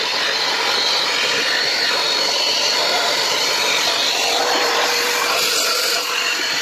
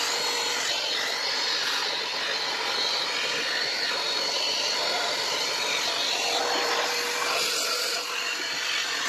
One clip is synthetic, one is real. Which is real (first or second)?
second